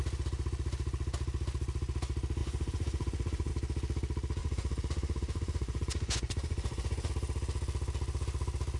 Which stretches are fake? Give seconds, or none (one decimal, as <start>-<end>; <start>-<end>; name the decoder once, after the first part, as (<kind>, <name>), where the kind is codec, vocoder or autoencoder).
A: 2.4-3.5 (vocoder, Vocos); 4.4-7.1